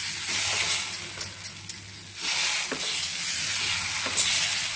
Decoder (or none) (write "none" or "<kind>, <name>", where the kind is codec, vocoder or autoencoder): none